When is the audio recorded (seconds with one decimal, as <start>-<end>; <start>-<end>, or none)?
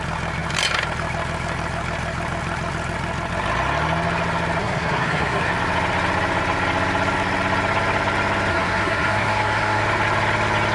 0.0-4.6; 5.5-8.5; 9.8-10.7